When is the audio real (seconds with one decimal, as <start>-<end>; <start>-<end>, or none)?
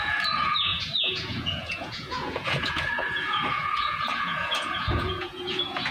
none